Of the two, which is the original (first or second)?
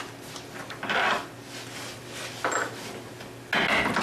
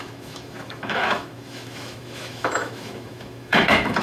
first